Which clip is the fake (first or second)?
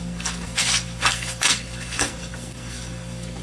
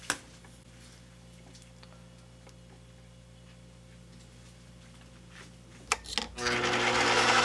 first